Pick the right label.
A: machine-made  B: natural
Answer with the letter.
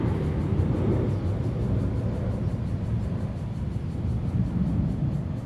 B